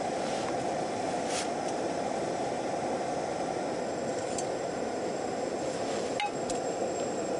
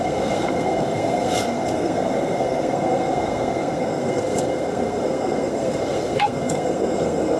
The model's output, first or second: second